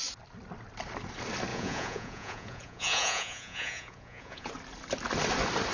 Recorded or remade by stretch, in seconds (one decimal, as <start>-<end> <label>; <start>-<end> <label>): 0.0-1.5 recorded; 1.5-4.5 remade; 4.5-5.7 recorded

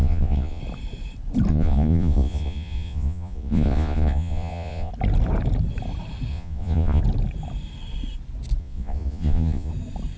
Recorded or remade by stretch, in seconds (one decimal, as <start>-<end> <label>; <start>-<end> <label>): 0.0-0.6 remade; 0.6-1.5 recorded; 1.5-4.9 remade; 4.9-6.3 recorded; 6.3-7.0 remade; 7.0-8.6 recorded; 8.6-9.7 remade; 9.7-10.2 recorded

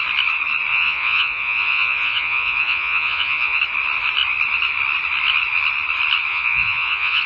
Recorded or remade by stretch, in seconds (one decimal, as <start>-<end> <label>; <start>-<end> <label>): 0.0-0.7 recorded; 0.7-3.6 remade; 3.6-6.3 recorded; 6.3-7.3 remade

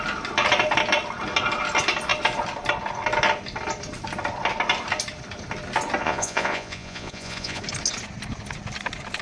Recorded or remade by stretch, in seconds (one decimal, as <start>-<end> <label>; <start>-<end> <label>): 0.0-6.0 recorded; 6.0-7.6 remade; 7.6-9.2 recorded

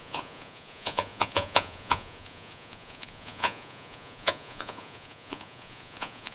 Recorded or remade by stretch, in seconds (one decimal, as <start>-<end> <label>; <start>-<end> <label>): 0.0-6.3 remade

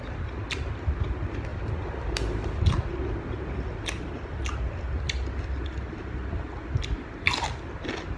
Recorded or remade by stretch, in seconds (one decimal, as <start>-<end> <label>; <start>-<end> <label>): 0.0-8.2 recorded